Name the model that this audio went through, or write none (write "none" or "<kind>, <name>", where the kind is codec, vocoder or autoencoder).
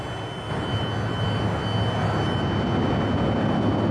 none